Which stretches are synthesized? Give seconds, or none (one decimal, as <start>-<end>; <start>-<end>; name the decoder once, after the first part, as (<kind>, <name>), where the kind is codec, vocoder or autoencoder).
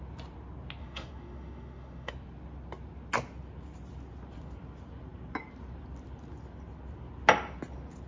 0.8-2.1 (autoencoder, DAC-VAE)